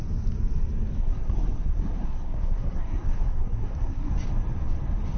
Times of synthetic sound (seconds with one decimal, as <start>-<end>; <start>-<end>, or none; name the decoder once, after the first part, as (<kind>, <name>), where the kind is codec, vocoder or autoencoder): 1.0-4.1 (codec, SNAC)